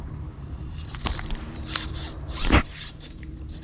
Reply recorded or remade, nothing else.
remade